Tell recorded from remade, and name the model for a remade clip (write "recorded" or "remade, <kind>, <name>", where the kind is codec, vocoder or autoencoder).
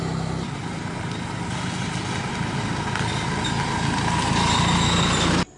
recorded